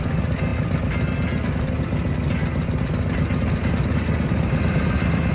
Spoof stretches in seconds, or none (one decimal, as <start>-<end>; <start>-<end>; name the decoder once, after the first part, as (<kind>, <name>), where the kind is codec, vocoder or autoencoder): none